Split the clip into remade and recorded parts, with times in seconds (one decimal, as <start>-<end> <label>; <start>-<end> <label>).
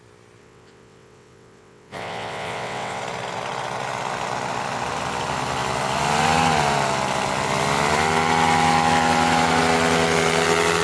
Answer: 0.0-0.4 recorded; 0.4-3.0 remade; 3.0-10.8 recorded